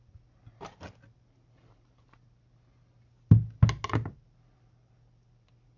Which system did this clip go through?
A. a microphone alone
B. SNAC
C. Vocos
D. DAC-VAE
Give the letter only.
A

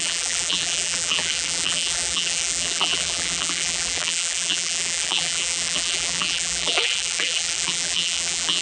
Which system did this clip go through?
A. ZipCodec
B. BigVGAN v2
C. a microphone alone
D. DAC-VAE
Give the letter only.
B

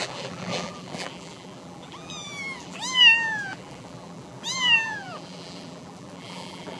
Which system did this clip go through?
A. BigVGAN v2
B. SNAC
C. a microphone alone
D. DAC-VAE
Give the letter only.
A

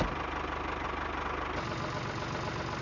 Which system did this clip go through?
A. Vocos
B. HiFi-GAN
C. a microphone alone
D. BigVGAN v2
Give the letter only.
C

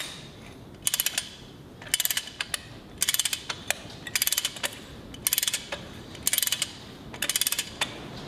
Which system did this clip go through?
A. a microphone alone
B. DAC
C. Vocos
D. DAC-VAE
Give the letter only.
A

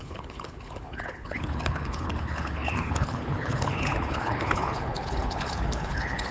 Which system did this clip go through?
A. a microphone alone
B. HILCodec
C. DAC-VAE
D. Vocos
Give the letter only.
B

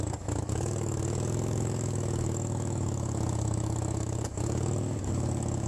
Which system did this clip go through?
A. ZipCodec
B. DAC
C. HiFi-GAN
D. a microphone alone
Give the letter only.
B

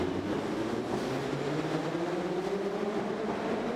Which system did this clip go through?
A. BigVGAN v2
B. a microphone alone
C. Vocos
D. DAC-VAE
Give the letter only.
B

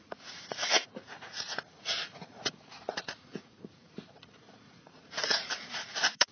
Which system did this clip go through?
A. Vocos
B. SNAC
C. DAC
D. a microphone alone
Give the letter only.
A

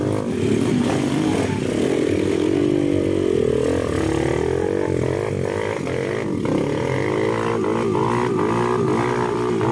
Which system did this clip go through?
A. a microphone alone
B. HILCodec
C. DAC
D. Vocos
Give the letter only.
A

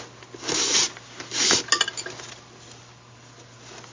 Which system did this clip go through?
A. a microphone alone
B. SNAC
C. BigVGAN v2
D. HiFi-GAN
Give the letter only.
A